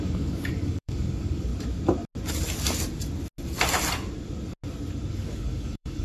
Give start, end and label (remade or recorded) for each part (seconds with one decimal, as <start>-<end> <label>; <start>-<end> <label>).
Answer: 0.0-1.5 remade; 1.5-5.1 recorded; 5.1-6.0 remade